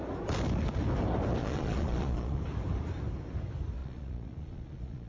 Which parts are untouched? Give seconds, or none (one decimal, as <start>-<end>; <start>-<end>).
0.0-1.4; 2.4-3.8